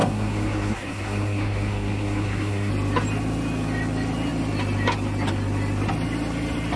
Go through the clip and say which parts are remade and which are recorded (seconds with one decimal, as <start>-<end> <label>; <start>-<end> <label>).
0.0-2.7 remade; 2.7-6.8 recorded